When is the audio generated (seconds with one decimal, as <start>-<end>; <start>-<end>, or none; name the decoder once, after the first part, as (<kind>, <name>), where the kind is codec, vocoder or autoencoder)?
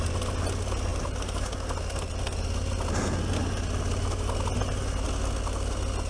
none